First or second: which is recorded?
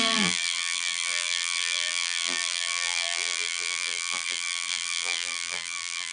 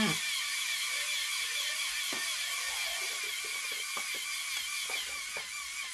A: second